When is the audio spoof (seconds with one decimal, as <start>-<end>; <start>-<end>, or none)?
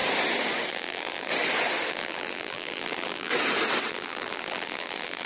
0.7-1.3; 1.9-3.3; 3.9-5.3